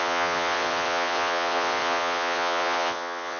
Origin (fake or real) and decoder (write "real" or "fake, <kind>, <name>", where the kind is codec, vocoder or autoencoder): fake, vocoder, WaveNeXt